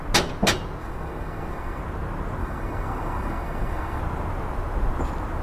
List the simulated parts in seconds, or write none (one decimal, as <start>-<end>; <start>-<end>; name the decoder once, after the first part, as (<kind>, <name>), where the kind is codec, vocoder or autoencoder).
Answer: 0.8-1.8 (codec, SNAC); 2.4-4.0